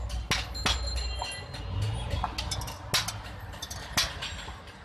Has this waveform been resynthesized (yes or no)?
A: no